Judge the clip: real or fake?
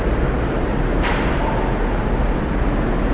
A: real